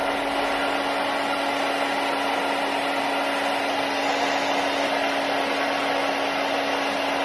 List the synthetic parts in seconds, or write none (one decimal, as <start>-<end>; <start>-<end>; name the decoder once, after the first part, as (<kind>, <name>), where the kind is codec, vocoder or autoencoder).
none

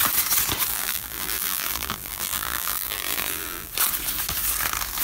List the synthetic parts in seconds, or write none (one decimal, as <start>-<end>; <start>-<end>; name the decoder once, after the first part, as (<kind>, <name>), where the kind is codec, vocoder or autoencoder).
0.7-3.7 (vocoder, BigVGAN v2)

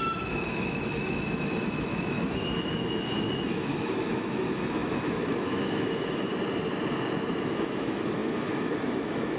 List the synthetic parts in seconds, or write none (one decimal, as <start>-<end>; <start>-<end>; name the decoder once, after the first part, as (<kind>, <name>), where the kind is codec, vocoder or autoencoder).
0.0-6.3 (autoencoder, DAC-VAE); 7.4-9.4

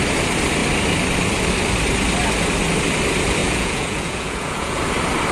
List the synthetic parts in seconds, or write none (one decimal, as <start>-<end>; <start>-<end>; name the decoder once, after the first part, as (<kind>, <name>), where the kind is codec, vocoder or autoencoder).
3.4-4.8 (vocoder, Vocos)

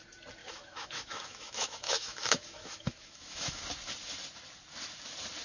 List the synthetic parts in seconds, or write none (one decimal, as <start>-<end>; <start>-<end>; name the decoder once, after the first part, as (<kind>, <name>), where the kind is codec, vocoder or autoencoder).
0.4-3.6 (autoencoder, DAC-VAE)

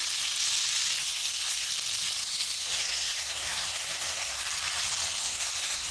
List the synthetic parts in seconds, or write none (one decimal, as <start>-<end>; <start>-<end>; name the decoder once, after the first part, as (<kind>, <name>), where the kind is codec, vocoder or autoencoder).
1.0-1.7 (codec, SNAC); 2.2-4.4; 5.2-5.9

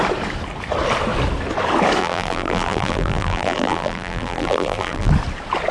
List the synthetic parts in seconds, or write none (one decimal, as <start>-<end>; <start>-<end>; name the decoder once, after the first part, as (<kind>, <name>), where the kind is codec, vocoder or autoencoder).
2.0-5.1 (vocoder, BigVGAN v2)

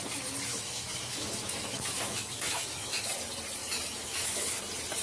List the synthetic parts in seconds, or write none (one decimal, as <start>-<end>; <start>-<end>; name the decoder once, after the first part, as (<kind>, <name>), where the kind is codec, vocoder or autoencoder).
0.5-3.1 (autoencoder, DAC-VAE); 3.6-4.6